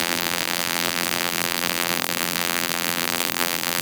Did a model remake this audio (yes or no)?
yes